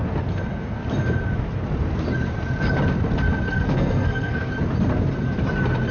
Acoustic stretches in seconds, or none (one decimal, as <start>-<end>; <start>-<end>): 0.0-3.5; 4.5-5.9